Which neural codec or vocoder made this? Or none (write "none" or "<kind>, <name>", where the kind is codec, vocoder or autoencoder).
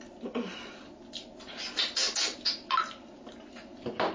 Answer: none